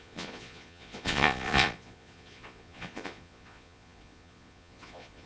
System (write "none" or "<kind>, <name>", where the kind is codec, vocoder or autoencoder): vocoder, Vocos